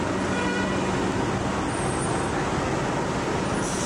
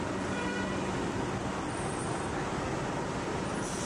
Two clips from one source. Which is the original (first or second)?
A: first